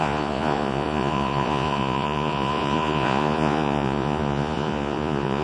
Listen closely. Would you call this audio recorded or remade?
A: remade